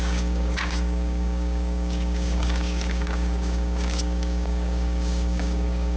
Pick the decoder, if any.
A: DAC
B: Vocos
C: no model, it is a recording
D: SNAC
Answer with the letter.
A